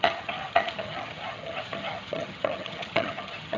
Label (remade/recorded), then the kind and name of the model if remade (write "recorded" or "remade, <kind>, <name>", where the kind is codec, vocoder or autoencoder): remade, vocoder, HiFi-GAN